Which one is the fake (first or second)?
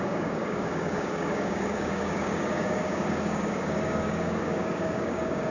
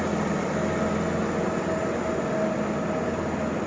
first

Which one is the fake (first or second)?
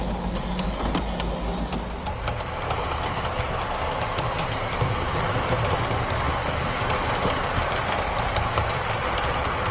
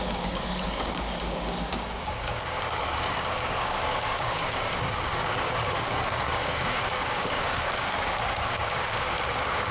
second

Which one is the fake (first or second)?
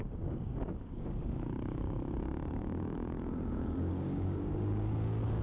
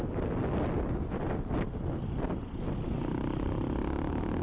first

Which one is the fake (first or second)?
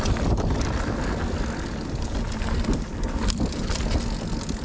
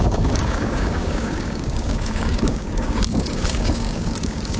second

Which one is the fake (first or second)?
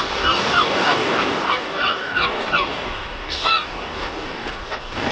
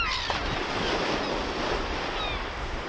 first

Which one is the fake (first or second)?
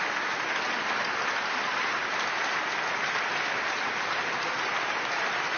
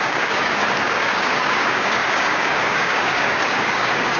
second